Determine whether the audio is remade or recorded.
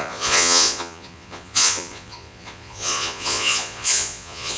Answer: remade